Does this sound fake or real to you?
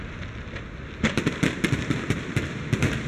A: real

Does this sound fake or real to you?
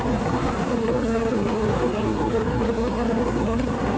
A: fake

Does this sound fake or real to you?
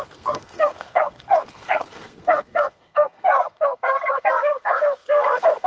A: fake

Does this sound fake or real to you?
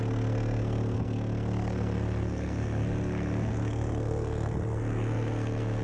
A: fake